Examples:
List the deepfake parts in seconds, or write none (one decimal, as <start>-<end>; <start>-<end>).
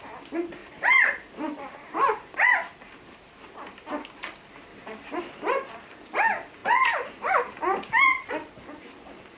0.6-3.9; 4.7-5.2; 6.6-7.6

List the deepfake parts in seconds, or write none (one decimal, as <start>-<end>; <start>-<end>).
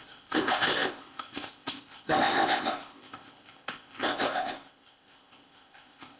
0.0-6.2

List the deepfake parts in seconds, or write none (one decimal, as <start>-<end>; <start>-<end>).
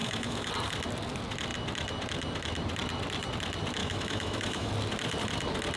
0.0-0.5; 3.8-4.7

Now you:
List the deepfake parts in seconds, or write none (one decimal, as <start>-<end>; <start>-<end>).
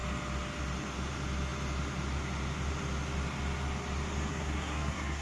4.3-5.2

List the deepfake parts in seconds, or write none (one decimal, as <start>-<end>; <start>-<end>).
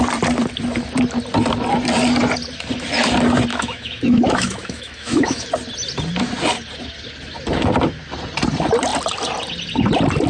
3.5-5.5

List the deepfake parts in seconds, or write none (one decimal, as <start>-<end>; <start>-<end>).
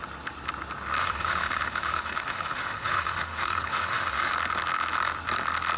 1.0-4.3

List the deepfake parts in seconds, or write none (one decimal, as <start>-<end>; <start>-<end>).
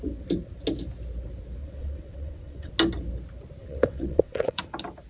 1.6-2.7; 3.6-4.6